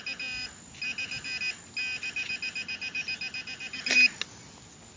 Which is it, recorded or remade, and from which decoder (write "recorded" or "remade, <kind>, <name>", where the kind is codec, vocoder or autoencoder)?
recorded